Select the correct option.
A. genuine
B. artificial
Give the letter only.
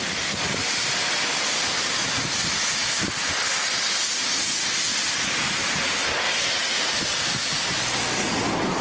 B